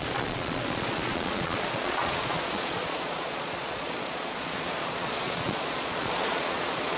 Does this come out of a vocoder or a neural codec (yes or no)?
yes